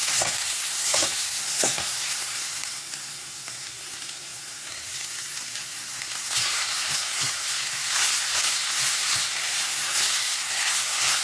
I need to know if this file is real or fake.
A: fake